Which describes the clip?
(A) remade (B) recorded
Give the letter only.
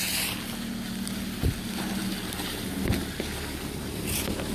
B